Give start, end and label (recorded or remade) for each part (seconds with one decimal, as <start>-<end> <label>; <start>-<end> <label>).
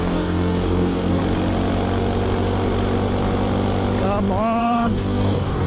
0.0-1.2 remade; 1.2-4.6 recorded; 4.6-5.7 remade